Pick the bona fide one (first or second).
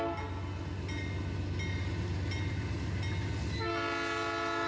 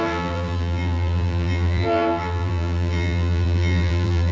first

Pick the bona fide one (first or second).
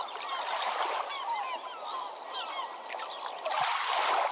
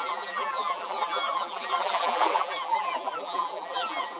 first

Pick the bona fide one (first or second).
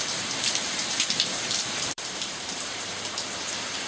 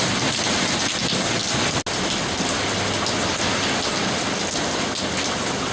second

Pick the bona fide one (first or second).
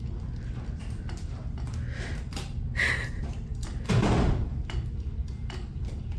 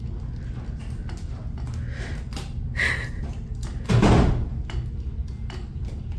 second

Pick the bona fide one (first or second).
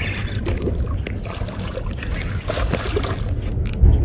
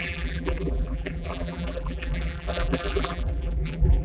first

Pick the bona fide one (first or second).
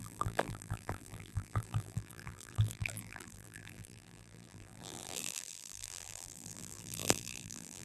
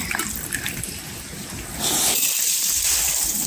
second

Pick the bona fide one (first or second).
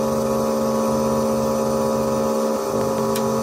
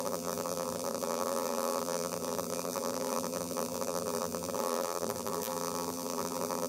first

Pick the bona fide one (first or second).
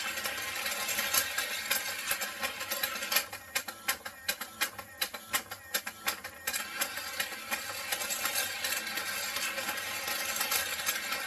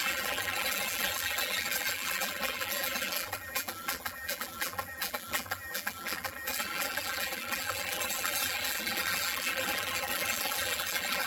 first